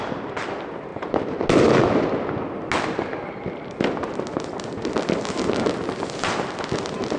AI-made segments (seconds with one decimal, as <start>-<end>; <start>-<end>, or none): none